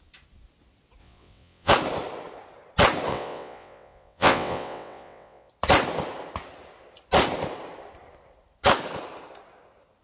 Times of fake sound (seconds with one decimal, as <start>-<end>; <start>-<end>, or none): 1.0-1.7; 3.1-5.5